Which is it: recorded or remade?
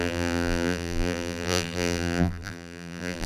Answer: remade